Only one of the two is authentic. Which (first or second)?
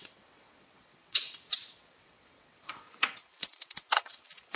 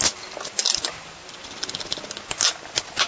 second